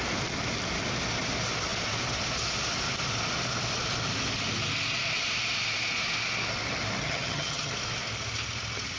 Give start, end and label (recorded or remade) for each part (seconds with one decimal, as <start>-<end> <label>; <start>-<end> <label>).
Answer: 0.0-7.0 recorded; 7.0-7.7 remade; 7.7-9.0 recorded